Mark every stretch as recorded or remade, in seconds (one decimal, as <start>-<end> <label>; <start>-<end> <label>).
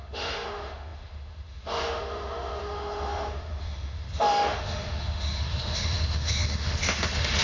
0.0-7.4 remade